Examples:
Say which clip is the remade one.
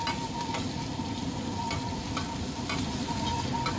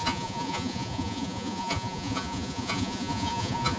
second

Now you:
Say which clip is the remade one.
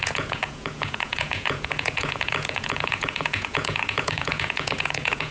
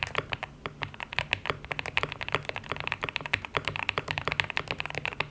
first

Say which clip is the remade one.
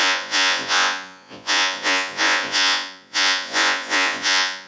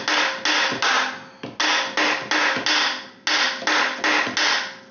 first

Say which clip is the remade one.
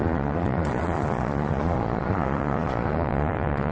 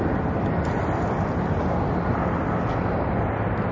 first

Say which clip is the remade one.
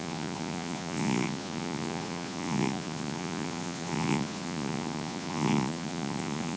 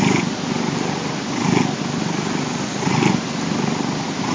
first